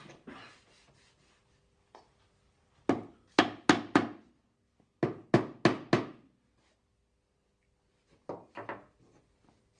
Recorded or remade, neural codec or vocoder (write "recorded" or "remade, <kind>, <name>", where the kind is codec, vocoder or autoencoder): recorded